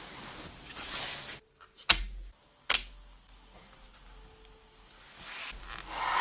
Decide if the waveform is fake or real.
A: real